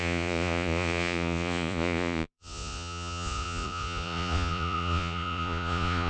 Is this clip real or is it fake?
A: fake